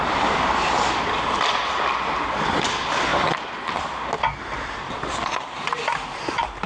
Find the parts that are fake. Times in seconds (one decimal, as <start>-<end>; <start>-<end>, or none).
none